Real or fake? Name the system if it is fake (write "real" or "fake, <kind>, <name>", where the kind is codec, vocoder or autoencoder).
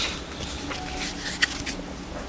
real